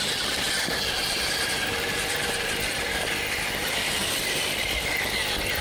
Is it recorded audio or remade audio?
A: recorded